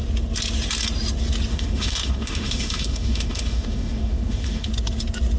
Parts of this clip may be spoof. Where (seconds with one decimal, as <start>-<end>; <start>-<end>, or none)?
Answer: 1.5-4.7